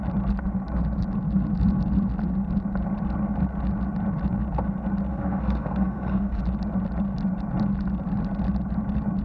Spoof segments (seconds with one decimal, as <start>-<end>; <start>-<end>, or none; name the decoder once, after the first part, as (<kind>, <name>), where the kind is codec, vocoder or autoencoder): 5.1-6.4 (codec, SNAC)